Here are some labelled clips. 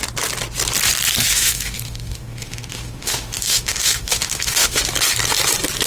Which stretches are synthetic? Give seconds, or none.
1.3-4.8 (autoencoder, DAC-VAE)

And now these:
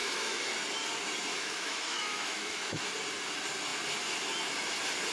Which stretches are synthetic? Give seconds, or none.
0.0-0.5 (autoencoder, DAC-VAE); 1.3-2.9